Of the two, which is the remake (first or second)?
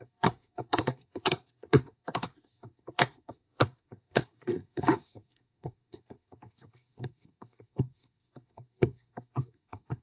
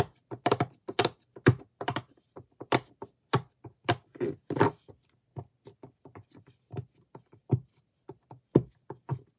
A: first